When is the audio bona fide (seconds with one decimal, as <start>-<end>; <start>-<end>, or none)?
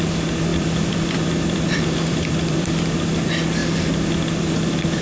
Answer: 0.0-0.5; 2.7-5.0